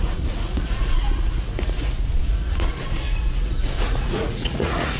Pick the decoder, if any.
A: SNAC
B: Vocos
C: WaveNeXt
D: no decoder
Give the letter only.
B